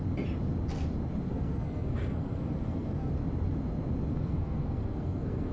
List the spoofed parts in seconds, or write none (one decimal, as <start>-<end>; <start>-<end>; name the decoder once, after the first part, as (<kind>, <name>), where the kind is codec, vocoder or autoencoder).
1.3-3.1 (codec, SNAC); 4.1-5.5